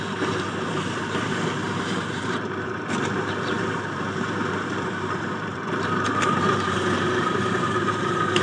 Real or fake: fake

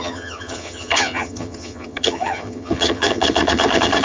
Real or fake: fake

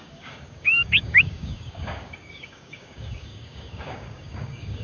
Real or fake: fake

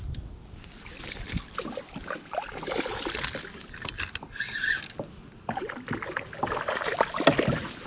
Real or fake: real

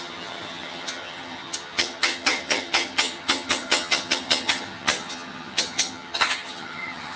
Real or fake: fake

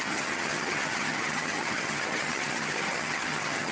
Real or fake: fake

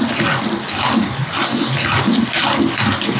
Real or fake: real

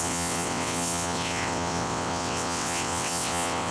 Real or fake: fake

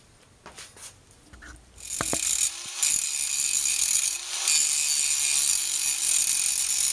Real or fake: real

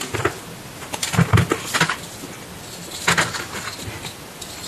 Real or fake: real